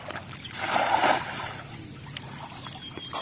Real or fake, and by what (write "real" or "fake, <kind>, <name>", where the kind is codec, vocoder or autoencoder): real